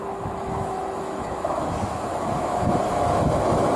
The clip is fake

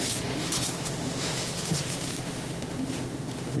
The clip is fake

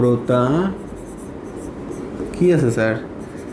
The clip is real